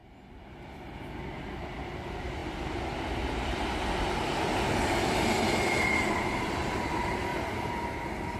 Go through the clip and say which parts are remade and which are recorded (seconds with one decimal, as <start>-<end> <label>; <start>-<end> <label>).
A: 0.0-7.3 recorded; 7.3-8.0 remade; 8.0-8.4 recorded